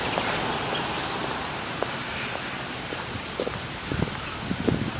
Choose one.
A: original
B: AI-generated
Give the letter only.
A